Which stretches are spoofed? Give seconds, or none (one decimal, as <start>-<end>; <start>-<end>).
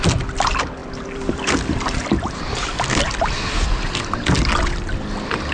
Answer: 0.8-3.3